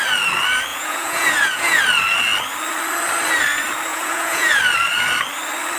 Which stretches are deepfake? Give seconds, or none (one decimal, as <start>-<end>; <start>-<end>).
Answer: 0.7-1.8; 3.9-4.6